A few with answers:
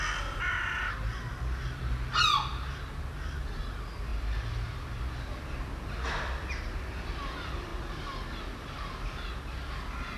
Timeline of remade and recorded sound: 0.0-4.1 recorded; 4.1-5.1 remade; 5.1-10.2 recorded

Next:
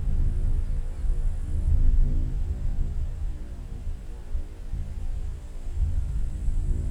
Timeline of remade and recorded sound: 0.0-6.9 recorded

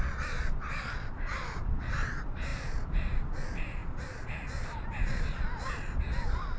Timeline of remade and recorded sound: 0.0-6.6 remade

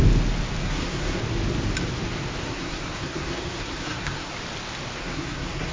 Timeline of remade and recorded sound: 0.0-0.6 recorded; 0.6-1.2 remade; 1.2-2.4 recorded; 2.4-4.3 remade; 4.3-5.0 recorded; 5.0-5.7 remade